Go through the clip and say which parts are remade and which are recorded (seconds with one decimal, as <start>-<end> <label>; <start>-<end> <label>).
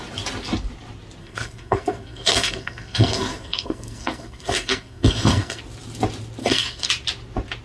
0.0-1.2 recorded; 1.2-5.6 remade; 5.6-6.4 recorded; 6.4-6.9 remade; 6.9-7.6 recorded